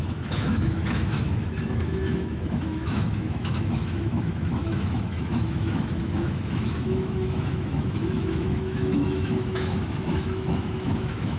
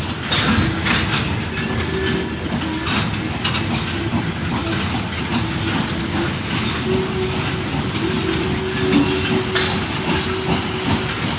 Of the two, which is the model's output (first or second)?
first